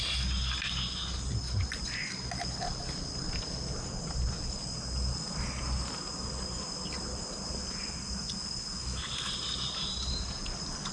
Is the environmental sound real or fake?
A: real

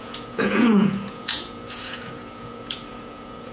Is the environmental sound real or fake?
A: fake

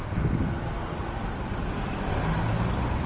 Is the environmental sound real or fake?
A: real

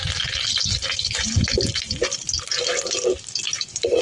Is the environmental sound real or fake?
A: real